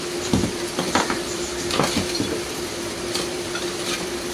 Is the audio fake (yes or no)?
yes